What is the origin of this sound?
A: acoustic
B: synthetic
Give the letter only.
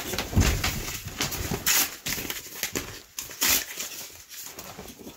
A